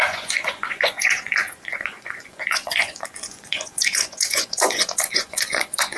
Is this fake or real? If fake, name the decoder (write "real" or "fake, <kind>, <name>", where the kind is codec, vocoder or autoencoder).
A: fake, vocoder, Vocos